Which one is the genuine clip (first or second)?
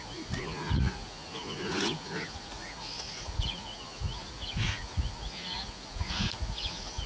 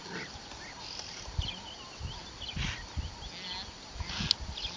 second